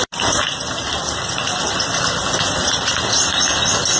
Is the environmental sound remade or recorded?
remade